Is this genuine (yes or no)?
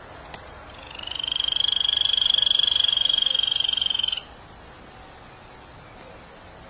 yes